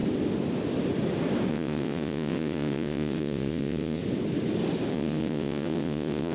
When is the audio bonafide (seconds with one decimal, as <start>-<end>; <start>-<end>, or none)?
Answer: 0.0-1.5; 4.0-4.9